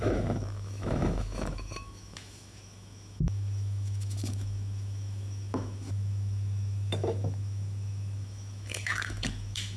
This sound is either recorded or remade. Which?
remade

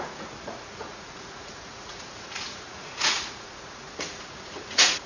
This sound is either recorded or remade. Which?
remade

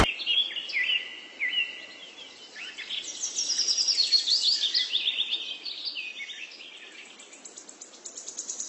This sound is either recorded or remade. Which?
recorded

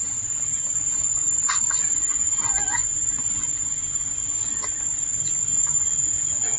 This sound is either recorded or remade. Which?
remade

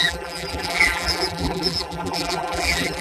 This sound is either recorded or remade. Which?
remade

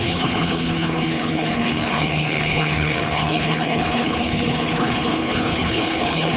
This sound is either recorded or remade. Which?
remade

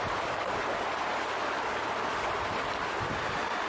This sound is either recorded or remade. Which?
recorded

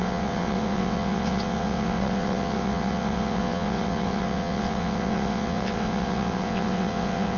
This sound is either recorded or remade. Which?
remade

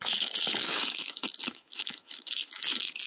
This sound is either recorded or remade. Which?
remade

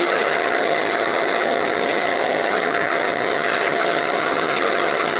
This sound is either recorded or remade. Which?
remade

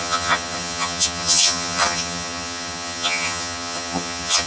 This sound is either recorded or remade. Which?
remade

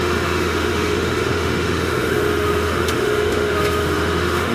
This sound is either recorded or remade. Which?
remade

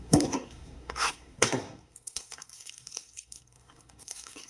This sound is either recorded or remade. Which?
remade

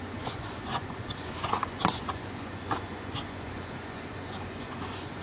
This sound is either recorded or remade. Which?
remade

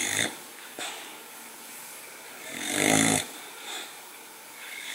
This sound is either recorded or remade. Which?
remade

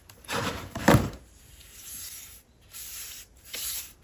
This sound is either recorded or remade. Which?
remade